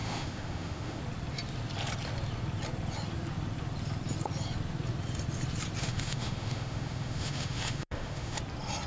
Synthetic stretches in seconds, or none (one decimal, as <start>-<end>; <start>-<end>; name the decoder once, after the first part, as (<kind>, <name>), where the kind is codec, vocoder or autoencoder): 0.0-1.0 (autoencoder, DAC-VAE); 5.8-8.4